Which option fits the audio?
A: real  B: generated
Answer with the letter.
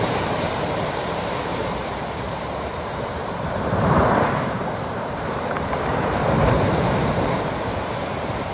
B